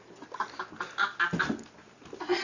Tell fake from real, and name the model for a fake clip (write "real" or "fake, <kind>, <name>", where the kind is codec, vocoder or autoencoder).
real